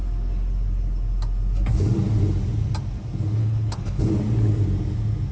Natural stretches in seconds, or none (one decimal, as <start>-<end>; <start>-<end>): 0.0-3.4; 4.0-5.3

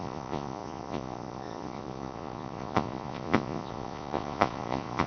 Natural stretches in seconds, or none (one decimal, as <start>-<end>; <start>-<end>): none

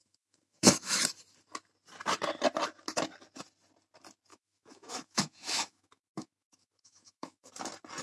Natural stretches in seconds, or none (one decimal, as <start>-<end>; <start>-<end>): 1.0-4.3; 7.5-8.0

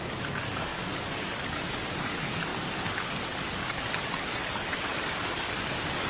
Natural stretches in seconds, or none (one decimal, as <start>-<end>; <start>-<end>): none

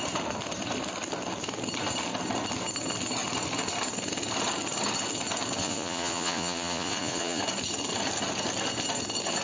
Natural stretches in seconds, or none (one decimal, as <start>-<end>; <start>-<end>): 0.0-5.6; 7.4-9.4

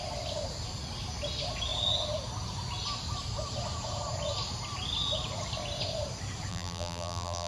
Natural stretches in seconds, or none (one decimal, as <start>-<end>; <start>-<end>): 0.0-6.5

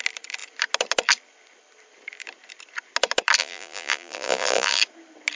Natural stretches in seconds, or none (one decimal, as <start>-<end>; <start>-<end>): 0.0-3.4; 4.8-5.4